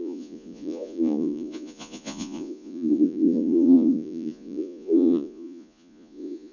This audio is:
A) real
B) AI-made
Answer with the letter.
B